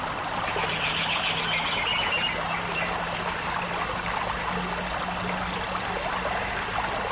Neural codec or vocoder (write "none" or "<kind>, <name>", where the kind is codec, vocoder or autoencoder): none